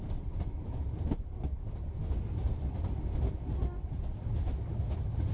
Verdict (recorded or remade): recorded